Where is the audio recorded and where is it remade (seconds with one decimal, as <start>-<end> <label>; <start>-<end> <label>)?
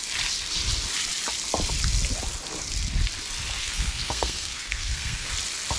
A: 0.0-3.6 recorded; 3.6-5.3 remade; 5.3-5.8 recorded